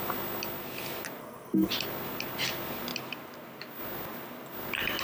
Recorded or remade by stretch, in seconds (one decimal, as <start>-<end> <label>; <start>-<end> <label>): 0.0-1.2 recorded; 1.2-1.7 remade; 1.7-5.0 recorded